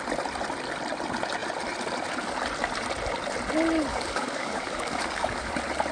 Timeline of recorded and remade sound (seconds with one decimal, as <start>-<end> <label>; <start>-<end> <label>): 0.0-3.9 recorded; 3.9-5.5 remade; 5.5-5.9 recorded

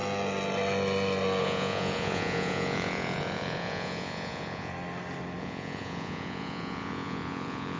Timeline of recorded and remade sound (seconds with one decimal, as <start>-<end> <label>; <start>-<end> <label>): 0.0-1.4 recorded; 1.4-4.7 remade; 4.7-5.4 recorded; 5.4-7.8 remade

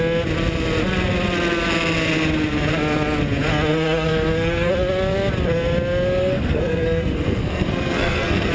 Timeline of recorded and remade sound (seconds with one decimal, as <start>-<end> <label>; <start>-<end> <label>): 0.0-3.7 recorded; 3.7-4.7 remade; 4.7-6.2 recorded; 6.2-8.5 remade

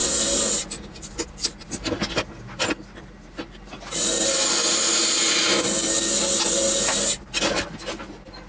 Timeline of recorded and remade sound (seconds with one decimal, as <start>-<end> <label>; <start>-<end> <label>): 0.0-8.5 recorded

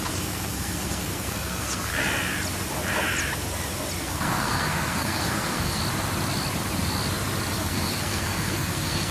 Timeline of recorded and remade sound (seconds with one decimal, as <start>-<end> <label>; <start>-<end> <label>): 0.0-1.9 remade; 1.9-4.0 recorded; 4.0-5.8 remade; 5.8-7.5 recorded; 7.5-9.1 remade

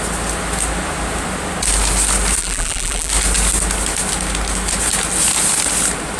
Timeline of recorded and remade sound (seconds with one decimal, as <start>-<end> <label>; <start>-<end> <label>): 0.0-2.4 recorded; 2.4-3.1 remade; 3.1-6.2 recorded